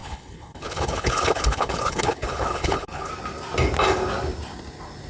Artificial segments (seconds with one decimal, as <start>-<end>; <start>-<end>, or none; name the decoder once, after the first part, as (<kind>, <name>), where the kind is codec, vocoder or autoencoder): 0.0-3.1 (codec, HILCodec)